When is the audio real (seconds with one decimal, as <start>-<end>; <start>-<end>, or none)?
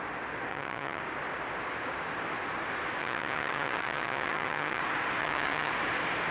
0.0-0.5; 1.0-3.0; 4.8-5.2; 5.7-6.3